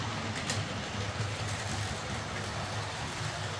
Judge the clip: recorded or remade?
recorded